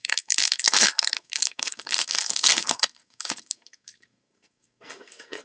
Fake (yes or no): yes